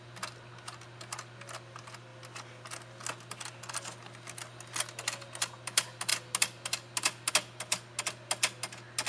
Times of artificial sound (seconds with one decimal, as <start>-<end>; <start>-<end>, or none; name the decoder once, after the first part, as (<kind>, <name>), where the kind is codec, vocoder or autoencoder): none